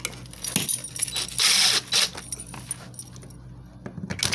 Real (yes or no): yes